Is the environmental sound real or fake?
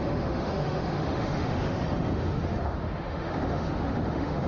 fake